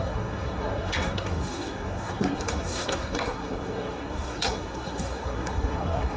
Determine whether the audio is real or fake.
fake